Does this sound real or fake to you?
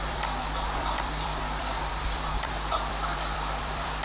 fake